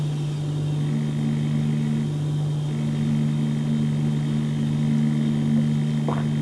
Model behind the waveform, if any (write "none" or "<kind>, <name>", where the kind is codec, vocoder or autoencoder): none